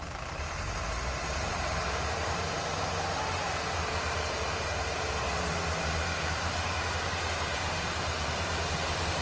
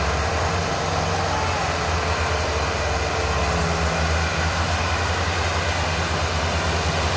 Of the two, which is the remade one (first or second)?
first